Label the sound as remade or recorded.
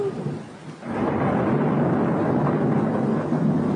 recorded